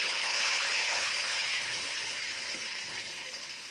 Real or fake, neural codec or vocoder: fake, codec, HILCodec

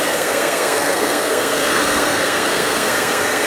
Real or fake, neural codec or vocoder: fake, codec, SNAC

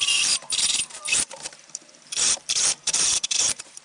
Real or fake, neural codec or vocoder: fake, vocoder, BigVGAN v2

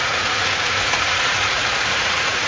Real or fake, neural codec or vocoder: fake, vocoder, Vocos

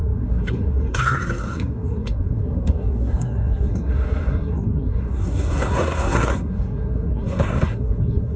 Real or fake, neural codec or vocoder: fake, codec, SNAC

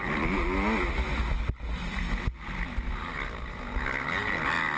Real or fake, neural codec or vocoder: real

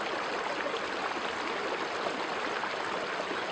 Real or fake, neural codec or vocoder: real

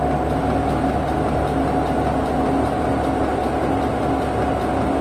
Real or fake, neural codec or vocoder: real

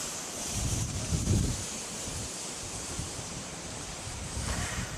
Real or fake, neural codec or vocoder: fake, vocoder, BigVGAN v2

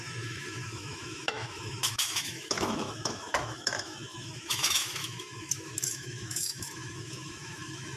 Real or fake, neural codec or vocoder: fake, autoencoder, DAC-VAE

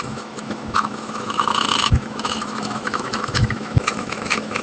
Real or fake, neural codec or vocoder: fake, autoencoder, DAC-VAE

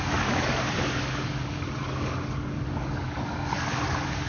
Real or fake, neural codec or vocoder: fake, codec, DAC